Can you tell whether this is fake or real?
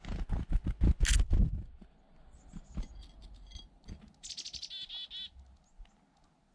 real